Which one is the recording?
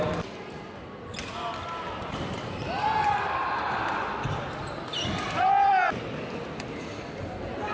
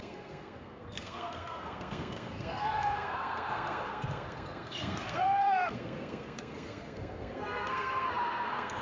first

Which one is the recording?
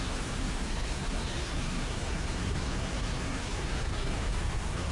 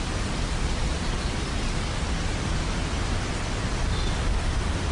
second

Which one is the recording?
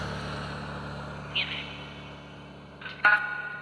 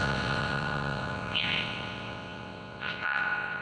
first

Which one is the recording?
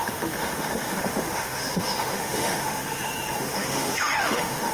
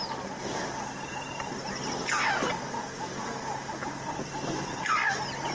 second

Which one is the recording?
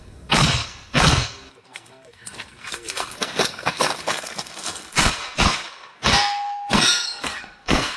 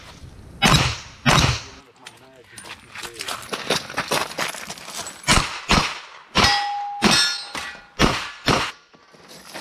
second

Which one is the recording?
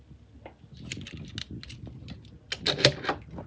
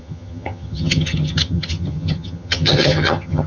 first